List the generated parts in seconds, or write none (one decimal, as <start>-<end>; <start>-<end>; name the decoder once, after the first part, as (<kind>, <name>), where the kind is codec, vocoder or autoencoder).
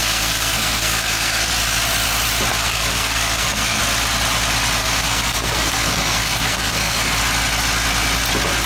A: 0.0-1.5 (codec, SNAC); 2.5-3.8; 4.8-7.1